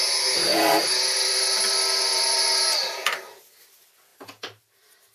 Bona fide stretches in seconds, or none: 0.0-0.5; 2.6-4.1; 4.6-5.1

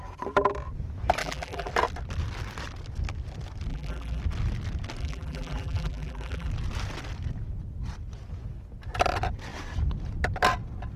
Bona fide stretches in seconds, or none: 0.0-1.2; 1.7-3.7; 4.2-5.0; 6.5-11.0

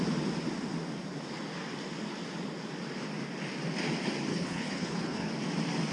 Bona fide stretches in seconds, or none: 0.0-4.3; 5.3-5.9